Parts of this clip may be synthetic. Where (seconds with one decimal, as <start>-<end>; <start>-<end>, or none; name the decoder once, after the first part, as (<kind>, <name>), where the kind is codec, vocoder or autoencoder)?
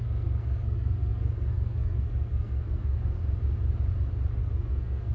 0.0-3.2 (codec, SNAC); 4.4-5.1